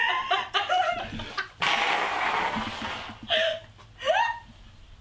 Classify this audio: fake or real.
real